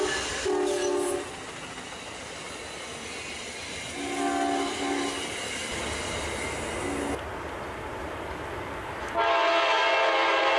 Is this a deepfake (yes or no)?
no